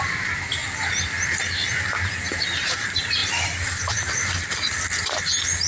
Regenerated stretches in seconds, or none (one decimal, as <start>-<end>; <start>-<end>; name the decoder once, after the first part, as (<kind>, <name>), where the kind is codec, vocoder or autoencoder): 0.0-0.6 (vocoder, BigVGAN v2); 2.3-4.7